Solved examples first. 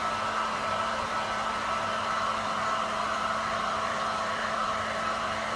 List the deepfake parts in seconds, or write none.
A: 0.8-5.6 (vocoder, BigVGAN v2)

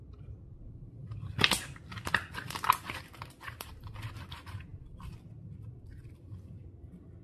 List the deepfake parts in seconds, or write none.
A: none

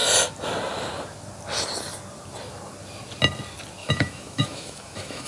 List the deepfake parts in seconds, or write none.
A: 3.8-5.3 (autoencoder, DAC-VAE)